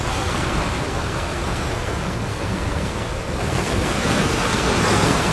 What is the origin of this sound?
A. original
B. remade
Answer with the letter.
B